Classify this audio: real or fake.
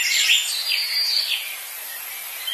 real